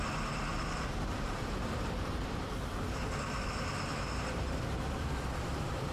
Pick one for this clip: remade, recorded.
remade